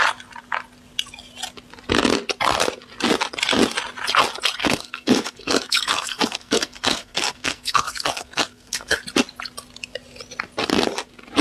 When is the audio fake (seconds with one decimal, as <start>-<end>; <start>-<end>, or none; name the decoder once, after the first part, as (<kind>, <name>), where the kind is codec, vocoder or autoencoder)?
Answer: 4.6-9.0 (codec, SNAC)